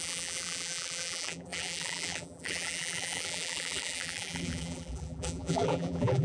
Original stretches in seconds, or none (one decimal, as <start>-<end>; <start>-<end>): none